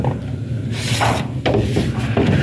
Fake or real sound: real